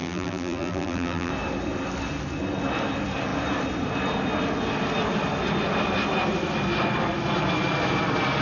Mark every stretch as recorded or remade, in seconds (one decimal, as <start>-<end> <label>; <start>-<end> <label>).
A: 0.0-1.3 remade; 1.3-8.4 recorded